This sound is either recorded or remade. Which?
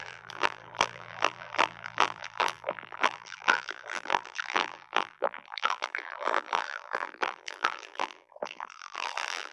remade